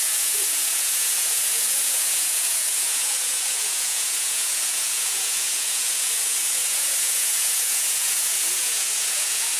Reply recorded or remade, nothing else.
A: remade